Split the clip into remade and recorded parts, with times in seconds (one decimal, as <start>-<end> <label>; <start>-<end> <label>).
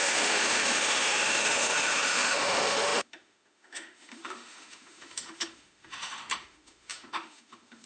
0.0-7.9 remade